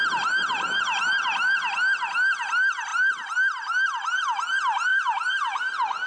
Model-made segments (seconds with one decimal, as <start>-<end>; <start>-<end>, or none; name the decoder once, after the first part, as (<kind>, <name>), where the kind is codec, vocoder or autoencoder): 4.9-5.6 (vocoder, BigVGAN v2)